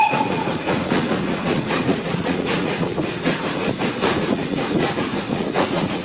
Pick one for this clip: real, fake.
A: fake